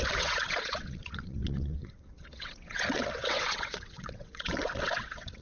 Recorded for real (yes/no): no